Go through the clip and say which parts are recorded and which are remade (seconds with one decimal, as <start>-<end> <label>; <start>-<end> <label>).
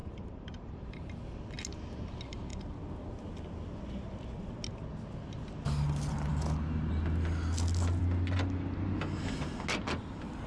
0.0-1.4 remade; 1.4-10.5 recorded